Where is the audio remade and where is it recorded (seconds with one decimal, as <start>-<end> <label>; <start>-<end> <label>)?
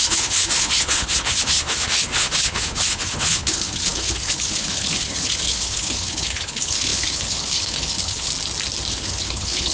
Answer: 0.0-8.3 remade; 8.3-8.9 recorded; 8.9-9.7 remade